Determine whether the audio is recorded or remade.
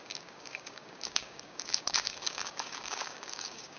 remade